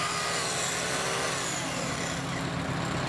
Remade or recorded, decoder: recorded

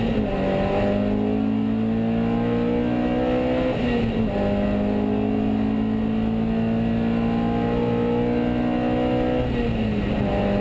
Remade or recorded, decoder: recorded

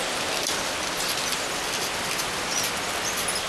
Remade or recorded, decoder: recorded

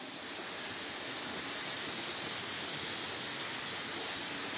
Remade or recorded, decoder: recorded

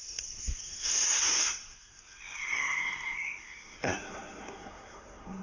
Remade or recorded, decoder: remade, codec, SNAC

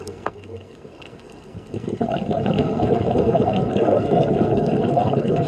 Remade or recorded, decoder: remade, codec, SNAC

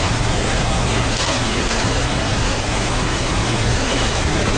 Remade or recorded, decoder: remade, codec, SNAC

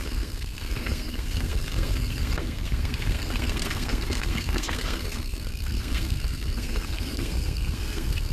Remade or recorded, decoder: remade, codec, SNAC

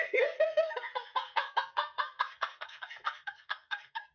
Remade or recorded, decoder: remade, codec, SNAC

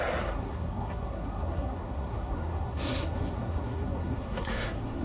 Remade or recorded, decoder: remade, codec, SNAC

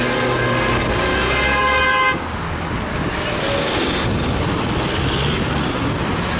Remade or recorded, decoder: recorded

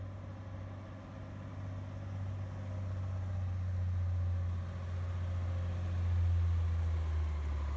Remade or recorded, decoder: recorded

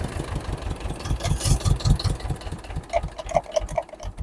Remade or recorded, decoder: recorded